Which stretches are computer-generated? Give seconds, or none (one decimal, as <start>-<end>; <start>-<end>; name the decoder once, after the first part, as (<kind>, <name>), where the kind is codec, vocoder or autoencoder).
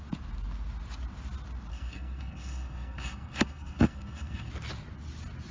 1.7-4.5 (codec, SNAC)